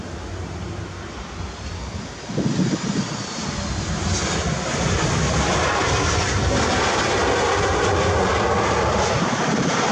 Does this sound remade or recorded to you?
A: recorded